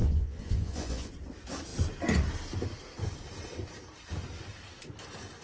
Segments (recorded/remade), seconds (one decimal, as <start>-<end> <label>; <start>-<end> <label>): 0.0-1.1 remade; 1.1-5.4 recorded